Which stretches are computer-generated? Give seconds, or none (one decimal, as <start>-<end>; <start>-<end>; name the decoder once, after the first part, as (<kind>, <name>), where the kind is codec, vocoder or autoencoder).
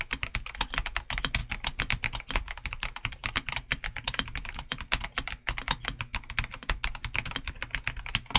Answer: 1.4-4.8 (vocoder, BigVGAN v2)